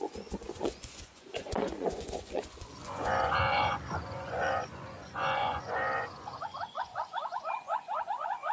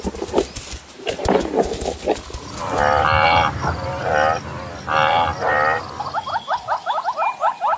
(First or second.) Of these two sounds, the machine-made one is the first